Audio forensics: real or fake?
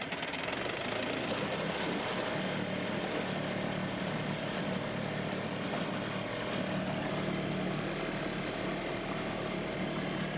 real